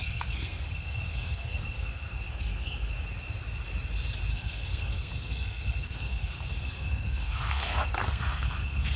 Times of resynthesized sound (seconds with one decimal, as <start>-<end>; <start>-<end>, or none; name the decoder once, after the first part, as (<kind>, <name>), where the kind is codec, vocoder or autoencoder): 0.0-2.9 (codec, SNAC); 4.3-9.0